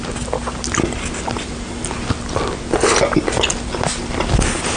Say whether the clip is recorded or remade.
recorded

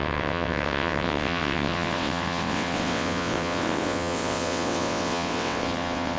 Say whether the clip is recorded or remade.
remade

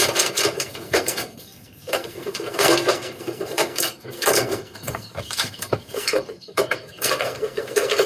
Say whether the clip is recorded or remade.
remade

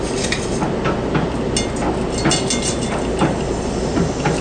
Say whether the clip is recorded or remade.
recorded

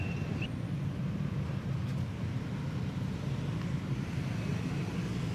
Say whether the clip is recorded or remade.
recorded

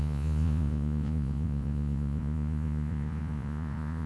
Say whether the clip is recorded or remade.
remade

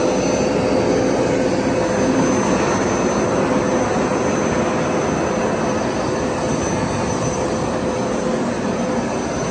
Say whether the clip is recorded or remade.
recorded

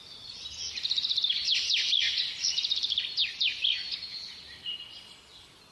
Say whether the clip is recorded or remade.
recorded